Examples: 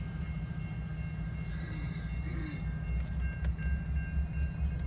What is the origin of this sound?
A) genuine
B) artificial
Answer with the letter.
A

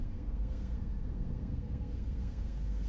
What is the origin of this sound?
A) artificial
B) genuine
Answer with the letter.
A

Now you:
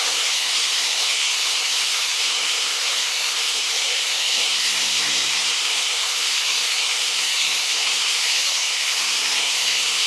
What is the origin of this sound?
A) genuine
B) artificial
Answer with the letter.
B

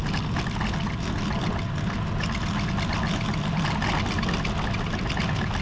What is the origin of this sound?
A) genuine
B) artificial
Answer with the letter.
A